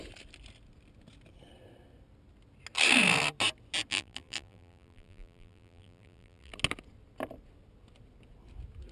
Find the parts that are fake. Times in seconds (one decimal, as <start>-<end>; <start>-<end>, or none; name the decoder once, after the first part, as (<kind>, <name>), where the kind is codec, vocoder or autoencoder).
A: 3.9-6.5 (vocoder, BigVGAN v2)